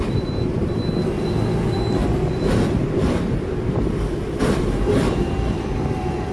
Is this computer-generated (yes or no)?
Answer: yes